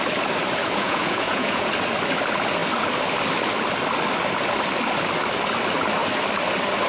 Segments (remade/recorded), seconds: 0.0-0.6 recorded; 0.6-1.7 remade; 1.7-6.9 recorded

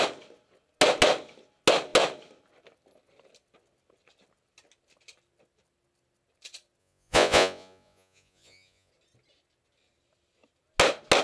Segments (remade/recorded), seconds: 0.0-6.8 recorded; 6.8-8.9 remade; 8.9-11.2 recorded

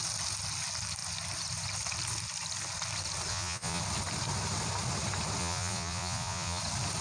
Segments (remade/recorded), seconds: 0.0-3.3 recorded; 3.3-3.8 remade; 3.8-5.4 recorded; 5.4-6.6 remade; 6.6-7.0 recorded

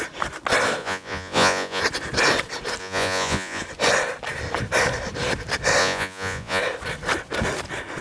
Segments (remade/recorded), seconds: 0.0-0.8 recorded; 0.8-1.8 remade; 1.8-2.8 recorded; 2.8-3.6 remade; 3.6-5.8 recorded; 5.8-6.6 remade; 6.6-8.0 recorded

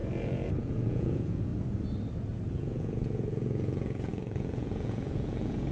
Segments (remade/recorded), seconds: 0.0-1.5 remade; 1.5-2.5 recorded; 2.5-5.7 remade